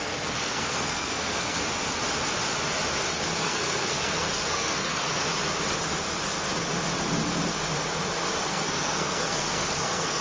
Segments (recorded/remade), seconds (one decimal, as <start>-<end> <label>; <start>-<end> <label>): 0.0-1.6 remade; 1.6-3.4 recorded; 3.4-5.2 remade; 5.2-8.4 recorded; 8.4-10.2 remade